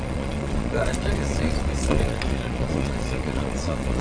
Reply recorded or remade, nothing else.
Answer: remade